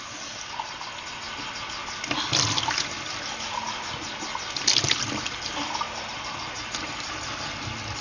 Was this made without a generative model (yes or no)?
yes